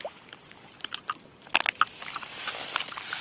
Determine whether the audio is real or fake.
real